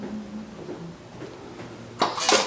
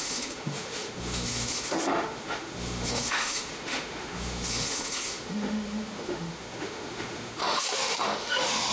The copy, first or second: second